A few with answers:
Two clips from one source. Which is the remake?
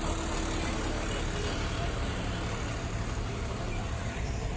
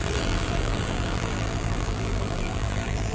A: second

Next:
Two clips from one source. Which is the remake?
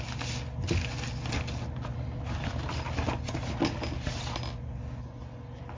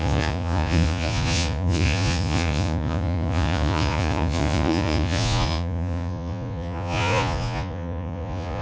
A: second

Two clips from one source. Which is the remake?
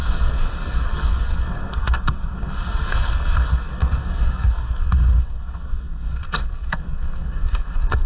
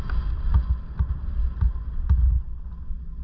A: first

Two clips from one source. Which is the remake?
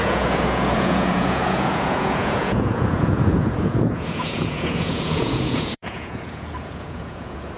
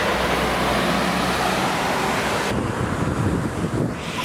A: first